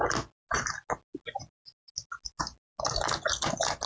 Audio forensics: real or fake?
real